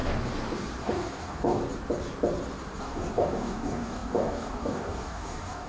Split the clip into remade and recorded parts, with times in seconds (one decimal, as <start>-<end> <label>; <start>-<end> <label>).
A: 0.0-0.8 recorded; 0.8-1.6 remade; 1.6-2.8 recorded; 2.8-5.7 remade